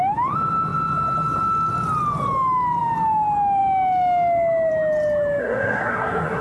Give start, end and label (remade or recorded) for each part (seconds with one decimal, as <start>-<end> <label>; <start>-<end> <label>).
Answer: 0.0-5.4 recorded; 5.4-6.4 remade